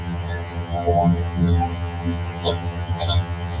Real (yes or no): no